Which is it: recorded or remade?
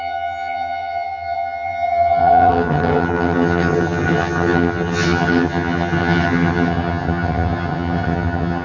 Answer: remade